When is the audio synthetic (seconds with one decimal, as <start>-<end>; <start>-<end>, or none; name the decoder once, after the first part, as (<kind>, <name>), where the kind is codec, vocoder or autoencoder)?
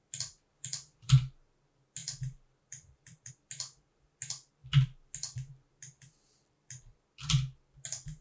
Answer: 0.5-1.1 (vocoder, BigVGAN v2); 2.0-3.3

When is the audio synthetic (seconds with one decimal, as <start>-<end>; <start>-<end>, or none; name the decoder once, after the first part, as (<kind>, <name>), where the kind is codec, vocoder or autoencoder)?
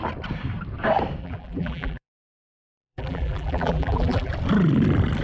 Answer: 1.2-4.3 (vocoder, BigVGAN v2)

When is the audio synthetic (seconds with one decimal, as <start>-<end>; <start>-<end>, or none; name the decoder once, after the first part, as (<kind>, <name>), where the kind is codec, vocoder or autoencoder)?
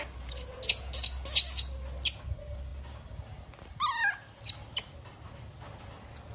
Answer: none